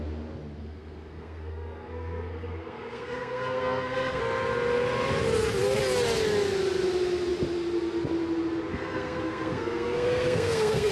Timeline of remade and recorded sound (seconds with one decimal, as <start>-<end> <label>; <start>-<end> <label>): 0.0-0.6 recorded; 0.6-4.2 remade; 4.2-8.7 recorded; 8.7-10.9 remade

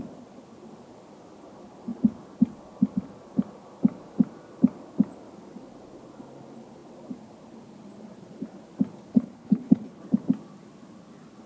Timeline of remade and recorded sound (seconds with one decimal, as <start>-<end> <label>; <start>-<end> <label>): 0.0-9.1 recorded; 9.1-10.0 remade; 10.0-11.5 recorded